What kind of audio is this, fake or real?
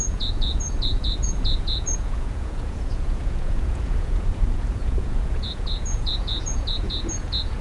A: fake